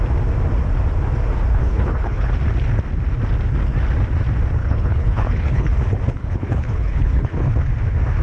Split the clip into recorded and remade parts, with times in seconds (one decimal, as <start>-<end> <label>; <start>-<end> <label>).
0.0-1.5 recorded; 1.5-2.3 remade; 2.3-4.6 recorded; 4.6-5.7 remade; 5.7-6.2 recorded; 6.2-7.5 remade; 7.5-8.2 recorded